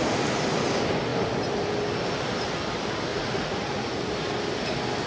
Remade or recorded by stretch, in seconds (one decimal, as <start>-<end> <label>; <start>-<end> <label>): 0.0-3.1 recorded; 3.1-4.1 remade; 4.1-5.1 recorded